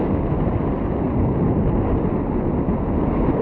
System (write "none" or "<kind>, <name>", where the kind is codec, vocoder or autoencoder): none